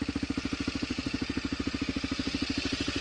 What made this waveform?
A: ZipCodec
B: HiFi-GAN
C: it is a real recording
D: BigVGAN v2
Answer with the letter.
C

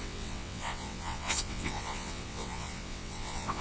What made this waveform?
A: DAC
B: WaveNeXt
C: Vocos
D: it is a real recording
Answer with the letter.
B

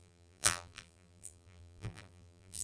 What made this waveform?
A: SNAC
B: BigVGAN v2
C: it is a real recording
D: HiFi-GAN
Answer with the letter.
B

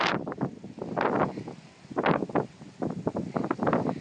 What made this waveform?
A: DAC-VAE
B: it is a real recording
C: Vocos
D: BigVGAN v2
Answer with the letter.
B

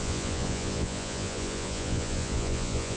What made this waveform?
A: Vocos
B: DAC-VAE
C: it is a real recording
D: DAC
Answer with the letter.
A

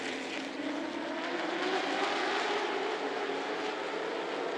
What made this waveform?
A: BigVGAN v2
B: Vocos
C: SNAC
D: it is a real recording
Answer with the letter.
D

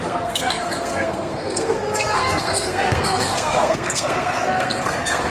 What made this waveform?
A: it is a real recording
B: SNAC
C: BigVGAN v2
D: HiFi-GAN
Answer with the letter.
B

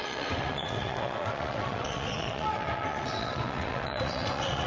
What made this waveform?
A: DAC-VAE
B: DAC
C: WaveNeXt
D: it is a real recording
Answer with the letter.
C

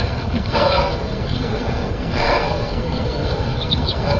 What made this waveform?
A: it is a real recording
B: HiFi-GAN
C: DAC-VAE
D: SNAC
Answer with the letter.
D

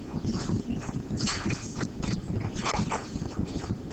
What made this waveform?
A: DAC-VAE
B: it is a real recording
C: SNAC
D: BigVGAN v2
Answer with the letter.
B